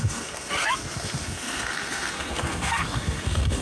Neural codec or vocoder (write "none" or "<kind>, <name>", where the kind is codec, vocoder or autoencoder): codec, SNAC